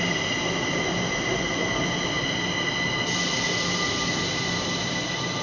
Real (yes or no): yes